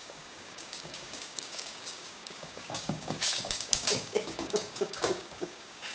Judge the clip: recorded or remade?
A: remade